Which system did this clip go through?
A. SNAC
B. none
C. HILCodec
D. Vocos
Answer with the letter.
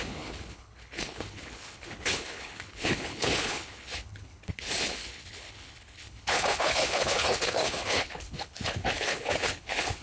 C